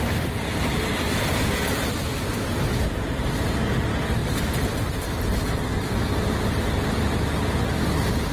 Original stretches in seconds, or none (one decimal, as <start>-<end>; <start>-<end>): 0.0-8.3